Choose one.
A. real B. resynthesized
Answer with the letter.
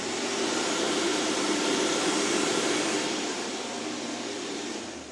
B